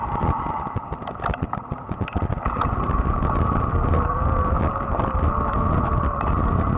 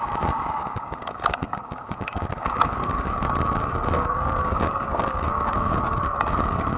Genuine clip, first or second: first